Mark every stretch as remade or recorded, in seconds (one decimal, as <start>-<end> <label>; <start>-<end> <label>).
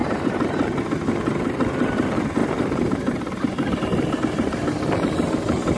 0.0-0.8 remade; 0.8-2.4 recorded; 2.4-4.8 remade; 4.8-5.8 recorded